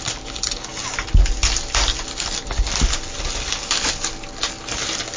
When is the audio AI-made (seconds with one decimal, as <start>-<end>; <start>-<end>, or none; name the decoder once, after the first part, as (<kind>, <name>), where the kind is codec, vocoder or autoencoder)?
none